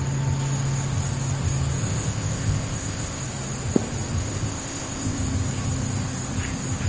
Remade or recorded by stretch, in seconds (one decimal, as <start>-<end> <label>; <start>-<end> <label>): 0.0-1.8 recorded; 1.8-3.2 remade; 3.2-4.2 recorded; 4.2-5.2 remade; 5.2-6.9 recorded